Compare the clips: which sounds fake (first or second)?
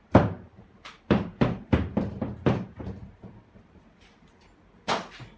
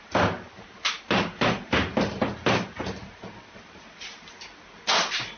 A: first